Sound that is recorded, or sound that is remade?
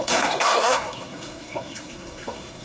remade